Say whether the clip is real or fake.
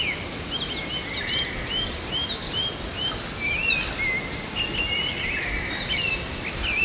real